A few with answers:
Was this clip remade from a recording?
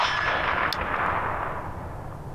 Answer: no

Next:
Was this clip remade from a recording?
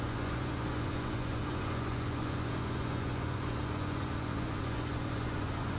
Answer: yes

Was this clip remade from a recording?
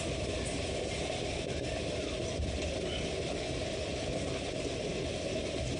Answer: no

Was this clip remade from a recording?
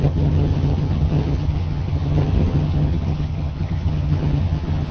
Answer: yes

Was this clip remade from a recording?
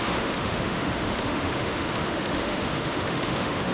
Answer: yes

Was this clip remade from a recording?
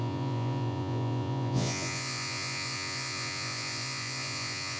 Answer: yes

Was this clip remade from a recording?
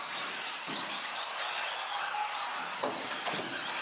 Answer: no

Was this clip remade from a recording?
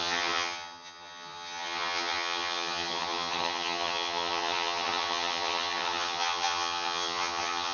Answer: yes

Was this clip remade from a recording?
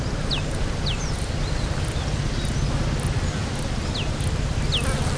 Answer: no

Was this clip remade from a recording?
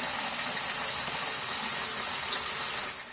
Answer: no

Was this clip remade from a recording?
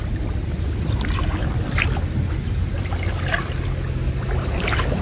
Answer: no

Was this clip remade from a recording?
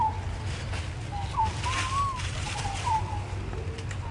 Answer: no